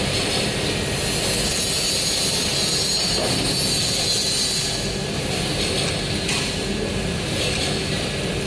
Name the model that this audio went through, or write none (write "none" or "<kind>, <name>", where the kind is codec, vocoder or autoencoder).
none